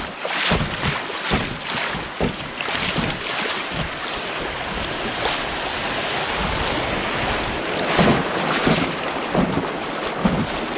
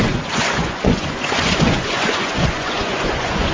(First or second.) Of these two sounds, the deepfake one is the second